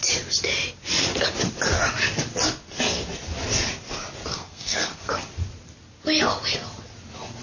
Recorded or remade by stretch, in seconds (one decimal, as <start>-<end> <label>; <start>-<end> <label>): 0.0-4.3 recorded; 4.3-5.2 remade; 5.2-7.4 recorded